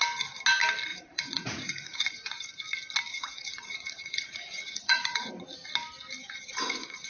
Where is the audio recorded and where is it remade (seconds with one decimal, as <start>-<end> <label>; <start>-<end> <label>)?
0.0-0.9 recorded; 0.9-2.4 remade; 2.4-3.1 recorded; 3.1-5.3 remade; 5.3-6.2 recorded; 6.2-7.1 remade